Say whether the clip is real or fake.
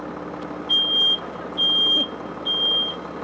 real